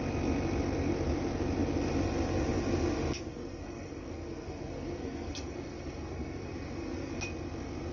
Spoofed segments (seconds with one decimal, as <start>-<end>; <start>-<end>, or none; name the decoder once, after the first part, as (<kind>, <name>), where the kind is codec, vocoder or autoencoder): 3.3-7.1 (codec, SNAC)